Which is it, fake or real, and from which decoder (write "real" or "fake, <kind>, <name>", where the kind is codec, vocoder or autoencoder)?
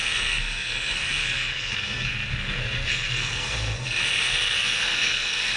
fake, codec, SNAC